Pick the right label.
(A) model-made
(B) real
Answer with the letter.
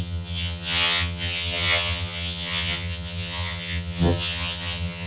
A